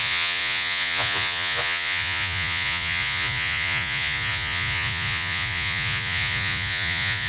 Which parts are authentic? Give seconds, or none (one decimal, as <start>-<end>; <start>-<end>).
none

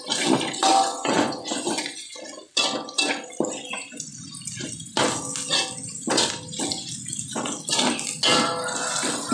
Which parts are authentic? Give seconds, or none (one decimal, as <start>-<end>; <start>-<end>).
0.0-0.7; 2.2-9.3

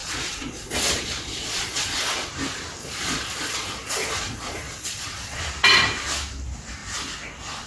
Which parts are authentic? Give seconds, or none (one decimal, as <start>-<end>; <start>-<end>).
2.3-2.8; 5.4-7.7

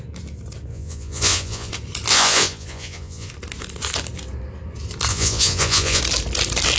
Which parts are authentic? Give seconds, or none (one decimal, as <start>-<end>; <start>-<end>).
0.0-0.7; 1.7-2.1; 3.3-5.1; 6.0-6.8

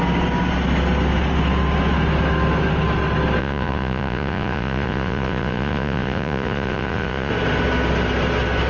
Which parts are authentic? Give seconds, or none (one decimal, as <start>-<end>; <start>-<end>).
0.0-3.4; 7.3-8.7

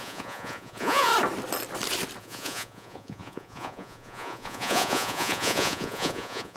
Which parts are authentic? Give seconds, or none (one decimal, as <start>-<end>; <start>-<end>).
1.1-2.2

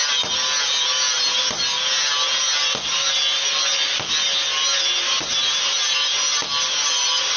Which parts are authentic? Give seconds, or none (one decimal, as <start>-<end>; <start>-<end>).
0.0-7.4